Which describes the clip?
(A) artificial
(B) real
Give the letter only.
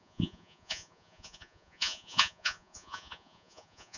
A